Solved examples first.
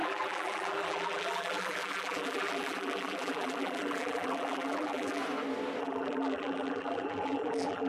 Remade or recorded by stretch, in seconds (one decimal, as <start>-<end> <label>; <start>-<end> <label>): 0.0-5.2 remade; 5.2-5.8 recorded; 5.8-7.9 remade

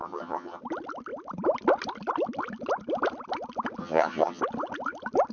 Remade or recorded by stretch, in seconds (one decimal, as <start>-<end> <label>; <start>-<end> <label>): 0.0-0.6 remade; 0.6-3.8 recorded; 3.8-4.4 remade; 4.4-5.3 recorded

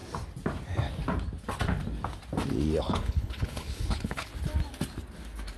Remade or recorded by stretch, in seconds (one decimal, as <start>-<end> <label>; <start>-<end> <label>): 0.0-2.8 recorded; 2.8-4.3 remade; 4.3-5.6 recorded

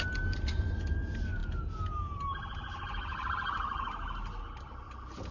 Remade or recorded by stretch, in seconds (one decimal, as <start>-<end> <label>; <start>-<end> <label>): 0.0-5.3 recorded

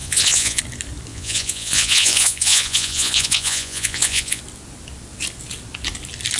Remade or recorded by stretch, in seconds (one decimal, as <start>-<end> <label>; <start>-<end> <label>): 0.0-0.6 remade; 0.6-1.1 recorded; 1.1-4.4 remade; 4.4-6.4 recorded

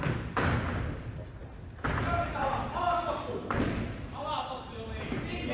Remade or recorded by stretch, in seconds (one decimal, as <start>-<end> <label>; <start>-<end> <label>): 0.0-5.5 recorded

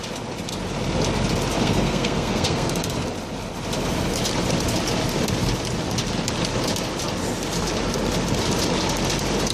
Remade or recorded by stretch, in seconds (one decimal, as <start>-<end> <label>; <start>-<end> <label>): 0.0-1.6 recorded; 1.6-2.7 remade; 2.7-9.5 recorded